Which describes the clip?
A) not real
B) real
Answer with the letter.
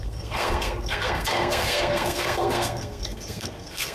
A